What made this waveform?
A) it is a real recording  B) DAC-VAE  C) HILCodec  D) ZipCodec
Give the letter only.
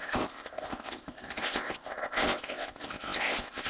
D